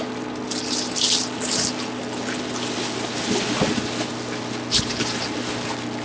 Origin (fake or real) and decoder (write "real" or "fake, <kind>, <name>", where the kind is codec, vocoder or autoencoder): real